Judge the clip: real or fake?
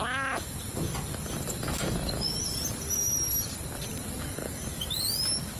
real